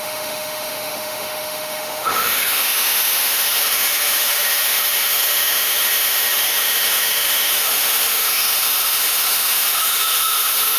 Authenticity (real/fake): fake